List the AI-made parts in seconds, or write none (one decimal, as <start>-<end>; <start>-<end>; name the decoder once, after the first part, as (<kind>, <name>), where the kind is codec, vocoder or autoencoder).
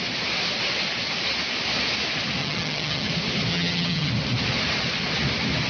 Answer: 2.4-3.1 (vocoder, HiFi-GAN); 3.5-4.1